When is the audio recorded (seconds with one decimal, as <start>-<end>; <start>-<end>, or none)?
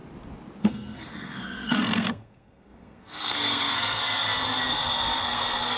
0.0-0.6; 4.0-5.2